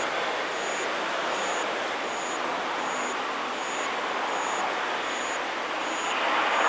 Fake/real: real